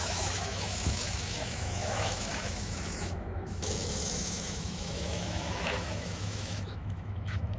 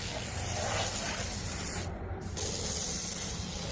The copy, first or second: first